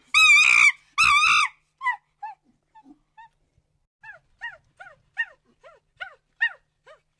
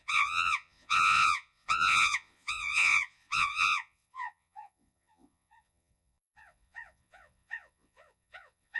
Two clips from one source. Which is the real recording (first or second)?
first